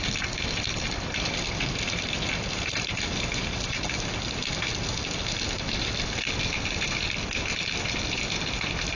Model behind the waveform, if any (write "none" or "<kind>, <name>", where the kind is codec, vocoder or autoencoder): none